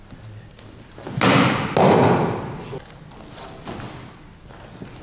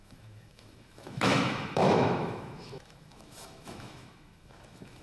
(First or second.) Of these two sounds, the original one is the first